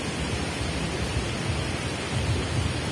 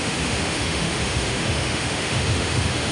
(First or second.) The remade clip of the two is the second